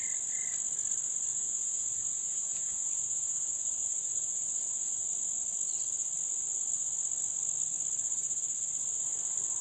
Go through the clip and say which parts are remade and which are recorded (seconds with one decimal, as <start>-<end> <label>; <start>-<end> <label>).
0.0-1.3 recorded; 1.3-4.9 remade; 4.9-9.6 recorded